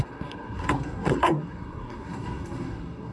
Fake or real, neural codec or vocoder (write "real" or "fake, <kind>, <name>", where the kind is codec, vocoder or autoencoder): fake, codec, SNAC